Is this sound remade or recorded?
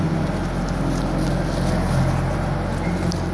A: recorded